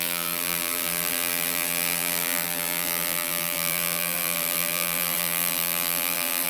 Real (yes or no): no